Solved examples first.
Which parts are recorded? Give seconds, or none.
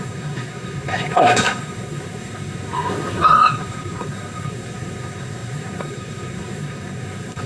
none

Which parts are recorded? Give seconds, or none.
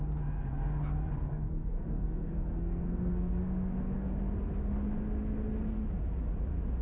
0.0-1.3; 4.1-6.8